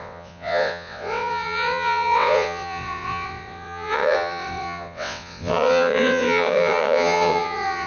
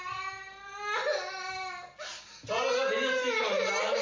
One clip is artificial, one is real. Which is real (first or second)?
second